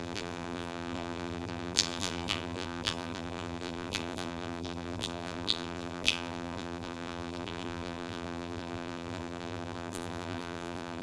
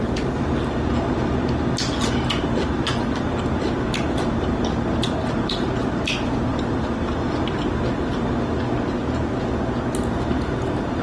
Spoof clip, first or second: first